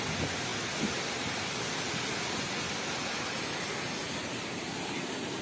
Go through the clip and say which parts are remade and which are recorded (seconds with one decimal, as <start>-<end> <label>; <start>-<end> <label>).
0.0-5.4 recorded